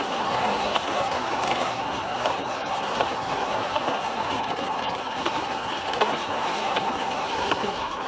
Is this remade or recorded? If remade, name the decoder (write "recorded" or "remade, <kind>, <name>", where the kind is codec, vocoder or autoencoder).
remade, codec, SNAC